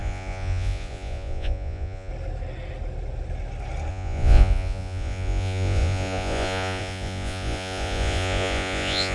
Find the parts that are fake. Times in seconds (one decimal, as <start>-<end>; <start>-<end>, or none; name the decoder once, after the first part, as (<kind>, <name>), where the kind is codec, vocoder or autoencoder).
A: 0.0-2.1 (vocoder, Vocos); 3.9-9.1

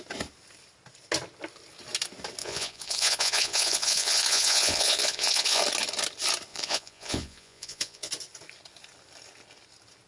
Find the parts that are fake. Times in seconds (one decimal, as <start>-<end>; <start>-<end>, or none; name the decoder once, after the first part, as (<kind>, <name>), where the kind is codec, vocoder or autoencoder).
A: 2.4-5.6 (vocoder, Vocos); 6.5-8.1

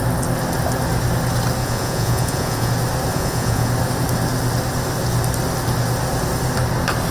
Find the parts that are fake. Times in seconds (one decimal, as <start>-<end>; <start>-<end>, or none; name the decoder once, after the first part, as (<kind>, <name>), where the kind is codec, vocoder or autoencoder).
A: 1.6-2.7 (vocoder, Vocos); 3.1-3.7